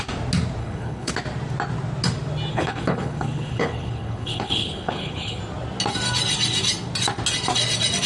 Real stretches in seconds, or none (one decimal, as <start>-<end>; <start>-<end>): 0.0-0.6; 1.1-2.5; 5.4-8.1